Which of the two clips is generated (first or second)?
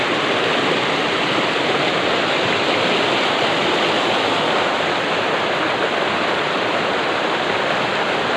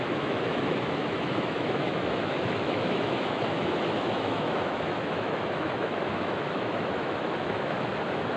second